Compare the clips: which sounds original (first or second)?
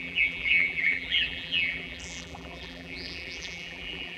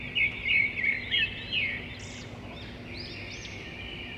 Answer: second